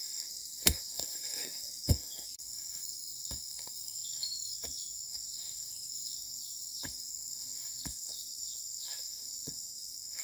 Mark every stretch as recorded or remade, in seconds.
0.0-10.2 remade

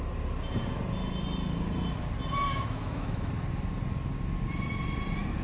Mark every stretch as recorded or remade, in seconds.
0.0-2.5 recorded; 2.5-3.3 remade; 3.3-5.4 recorded